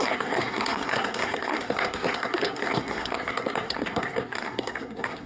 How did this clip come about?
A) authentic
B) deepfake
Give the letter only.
B